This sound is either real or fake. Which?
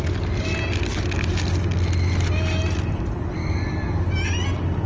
real